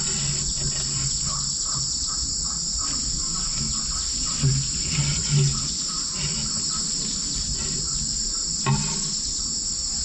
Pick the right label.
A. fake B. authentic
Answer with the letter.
B